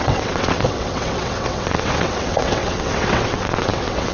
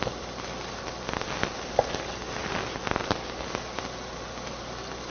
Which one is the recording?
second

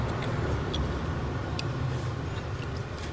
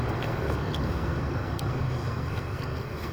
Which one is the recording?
first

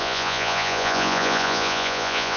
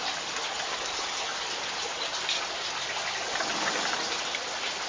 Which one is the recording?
second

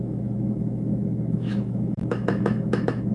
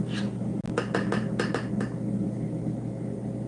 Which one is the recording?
second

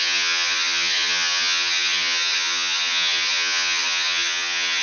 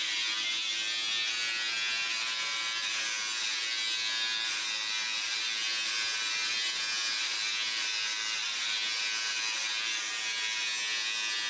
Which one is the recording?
second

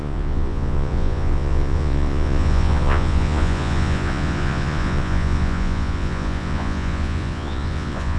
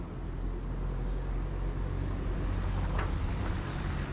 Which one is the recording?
second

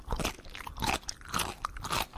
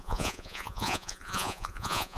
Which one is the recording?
first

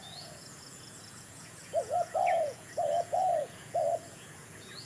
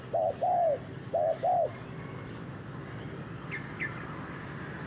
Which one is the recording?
second